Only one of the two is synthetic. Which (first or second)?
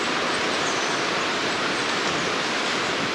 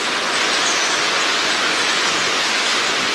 second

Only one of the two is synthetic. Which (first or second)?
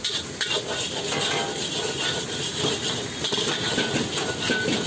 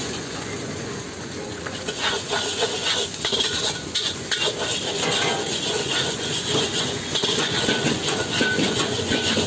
second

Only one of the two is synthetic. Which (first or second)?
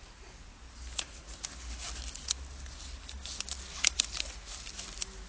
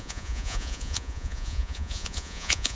second